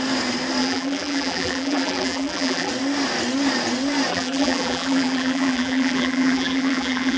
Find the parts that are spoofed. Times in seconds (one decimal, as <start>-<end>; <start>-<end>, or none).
0.6-2.7; 4.1-7.2